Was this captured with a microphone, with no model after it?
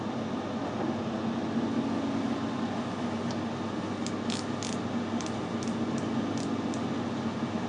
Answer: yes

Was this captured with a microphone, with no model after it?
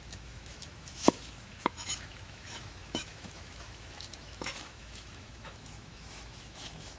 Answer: no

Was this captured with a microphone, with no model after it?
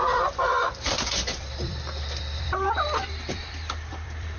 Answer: no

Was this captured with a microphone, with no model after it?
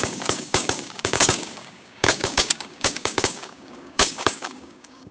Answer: no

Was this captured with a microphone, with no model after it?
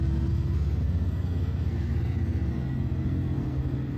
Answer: no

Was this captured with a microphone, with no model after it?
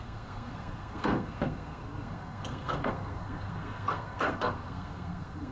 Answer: no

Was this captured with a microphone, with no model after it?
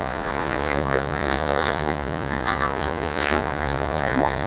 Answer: no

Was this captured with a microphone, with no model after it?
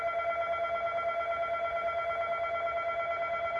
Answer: yes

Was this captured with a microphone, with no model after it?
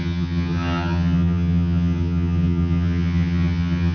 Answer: no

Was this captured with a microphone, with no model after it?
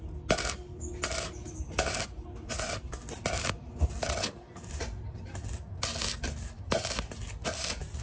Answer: yes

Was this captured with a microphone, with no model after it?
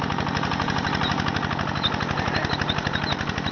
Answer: yes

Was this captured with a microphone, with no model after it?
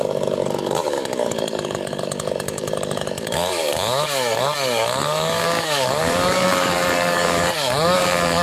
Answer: no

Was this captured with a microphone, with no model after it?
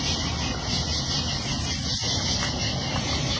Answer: yes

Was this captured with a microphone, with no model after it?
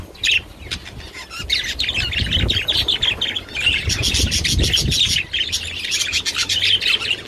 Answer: yes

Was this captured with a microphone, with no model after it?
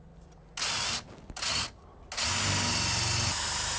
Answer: yes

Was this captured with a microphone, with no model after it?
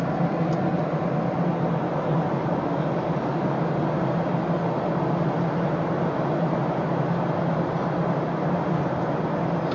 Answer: yes